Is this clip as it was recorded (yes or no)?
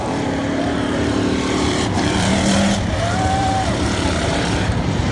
no